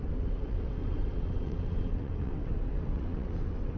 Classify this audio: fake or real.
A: fake